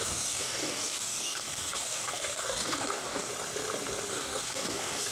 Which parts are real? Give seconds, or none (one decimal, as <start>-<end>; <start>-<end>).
3.3-4.1